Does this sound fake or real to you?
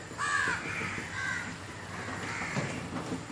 real